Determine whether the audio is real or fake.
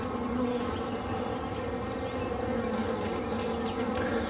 real